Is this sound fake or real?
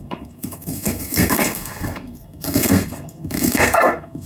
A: fake